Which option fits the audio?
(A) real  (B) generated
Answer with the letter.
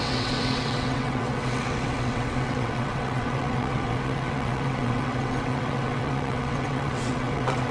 B